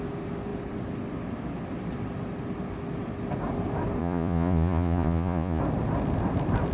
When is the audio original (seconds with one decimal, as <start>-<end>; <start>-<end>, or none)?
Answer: 0.0-4.0; 5.6-6.7